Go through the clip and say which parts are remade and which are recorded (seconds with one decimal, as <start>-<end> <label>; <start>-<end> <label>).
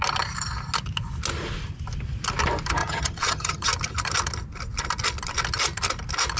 0.0-2.8 recorded; 2.8-3.7 remade; 3.7-6.4 recorded